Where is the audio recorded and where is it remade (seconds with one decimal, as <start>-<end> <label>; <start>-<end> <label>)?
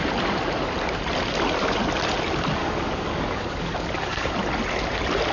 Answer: 0.0-2.6 recorded; 2.6-4.3 remade; 4.3-5.3 recorded